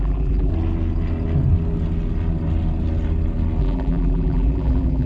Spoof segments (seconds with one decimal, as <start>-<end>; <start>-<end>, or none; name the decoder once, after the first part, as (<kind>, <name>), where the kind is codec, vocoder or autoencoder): 0.0-0.5 (vocoder, BigVGAN v2); 3.6-5.1